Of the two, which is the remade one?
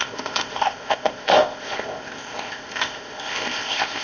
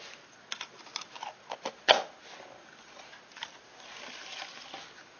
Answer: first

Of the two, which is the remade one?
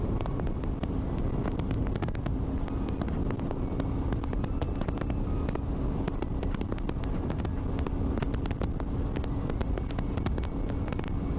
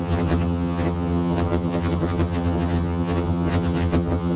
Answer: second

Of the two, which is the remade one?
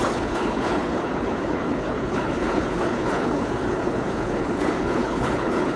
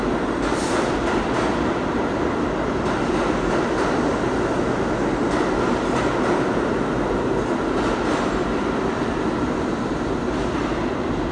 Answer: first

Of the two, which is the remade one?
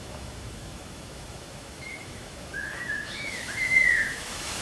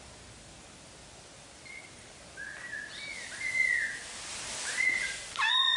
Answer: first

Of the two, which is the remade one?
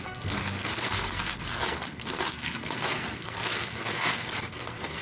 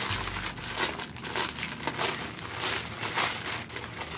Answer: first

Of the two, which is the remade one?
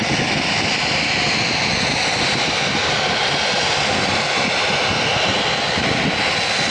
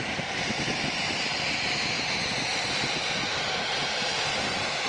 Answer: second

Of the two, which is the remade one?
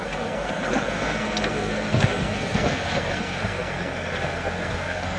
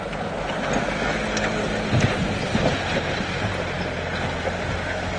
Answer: first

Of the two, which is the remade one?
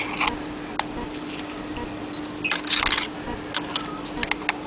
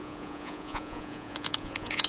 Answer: second